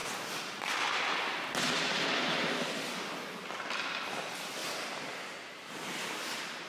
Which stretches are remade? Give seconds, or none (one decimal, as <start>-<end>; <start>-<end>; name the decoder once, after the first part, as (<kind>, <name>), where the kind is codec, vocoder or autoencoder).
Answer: 2.6-4.6 (vocoder, BigVGAN v2)

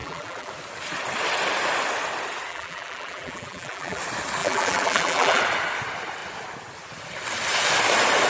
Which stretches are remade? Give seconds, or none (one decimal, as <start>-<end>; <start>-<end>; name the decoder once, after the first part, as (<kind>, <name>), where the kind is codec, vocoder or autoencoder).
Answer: 0.0-0.5 (vocoder, BigVGAN v2); 2.5-4.0; 4.4-5.4

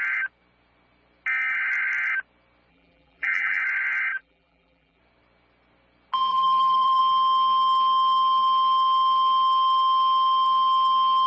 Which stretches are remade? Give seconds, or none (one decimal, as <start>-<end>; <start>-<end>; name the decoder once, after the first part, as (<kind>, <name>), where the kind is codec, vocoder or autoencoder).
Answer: 2.7-3.6 (vocoder, BigVGAN v2); 4.1-5.0; 6.3-7.0

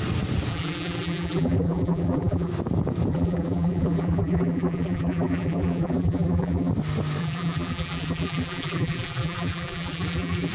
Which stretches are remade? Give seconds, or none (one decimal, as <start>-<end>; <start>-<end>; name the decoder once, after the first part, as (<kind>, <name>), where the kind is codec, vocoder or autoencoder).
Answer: 0.5-2.5 (vocoder, BigVGAN v2); 3.1-6.7; 7.2-10.5

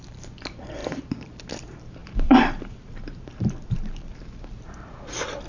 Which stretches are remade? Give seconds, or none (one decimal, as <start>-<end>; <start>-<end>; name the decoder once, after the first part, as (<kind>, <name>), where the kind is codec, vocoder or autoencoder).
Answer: 0.0-5.5 (vocoder, BigVGAN v2)

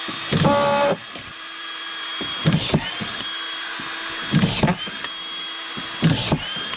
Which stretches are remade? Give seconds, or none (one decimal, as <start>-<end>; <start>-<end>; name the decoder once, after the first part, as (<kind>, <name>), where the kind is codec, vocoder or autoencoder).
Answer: 1.0-3.8 (vocoder, BigVGAN v2)

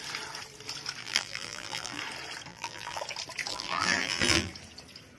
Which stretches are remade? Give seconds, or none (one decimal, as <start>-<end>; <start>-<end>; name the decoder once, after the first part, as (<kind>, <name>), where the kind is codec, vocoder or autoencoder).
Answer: 1.0-2.0 (vocoder, BigVGAN v2); 2.5-3.0; 3.5-4.5